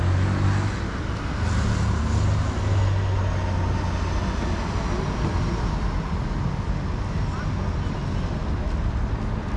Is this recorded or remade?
recorded